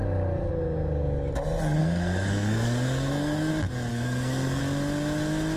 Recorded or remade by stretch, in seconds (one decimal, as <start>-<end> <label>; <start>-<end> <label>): 0.0-1.8 recorded; 1.8-3.5 remade; 3.5-3.9 recorded; 3.9-4.6 remade; 4.6-5.6 recorded